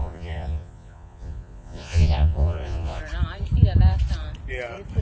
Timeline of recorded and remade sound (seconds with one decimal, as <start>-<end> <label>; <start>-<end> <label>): 0.0-3.0 remade; 3.0-5.0 recorded